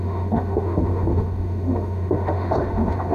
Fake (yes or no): yes